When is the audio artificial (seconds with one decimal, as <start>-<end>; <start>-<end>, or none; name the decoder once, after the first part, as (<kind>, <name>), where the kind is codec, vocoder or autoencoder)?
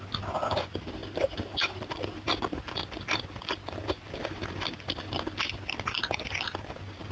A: none